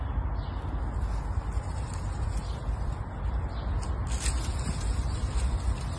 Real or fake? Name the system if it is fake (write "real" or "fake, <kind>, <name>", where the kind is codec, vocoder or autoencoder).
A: real